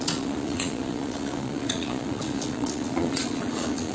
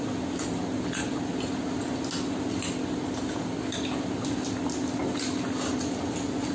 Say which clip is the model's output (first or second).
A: first